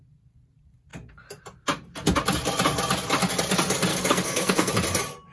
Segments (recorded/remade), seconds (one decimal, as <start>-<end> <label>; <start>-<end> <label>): 0.0-3.9 recorded; 3.9-4.7 remade; 4.7-5.3 recorded